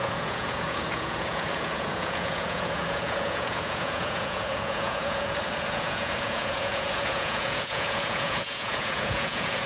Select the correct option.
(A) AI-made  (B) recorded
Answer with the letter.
A